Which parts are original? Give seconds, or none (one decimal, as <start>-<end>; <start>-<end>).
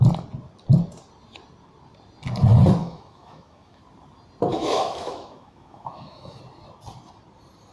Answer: 0.0-2.8; 3.8-4.5; 6.4-7.7